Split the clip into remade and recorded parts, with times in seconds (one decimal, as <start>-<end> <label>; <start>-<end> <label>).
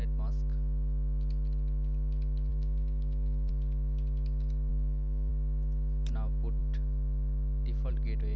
0.0-2.5 recorded; 2.5-3.5 remade; 3.5-4.7 recorded; 4.7-5.3 remade; 5.3-8.4 recorded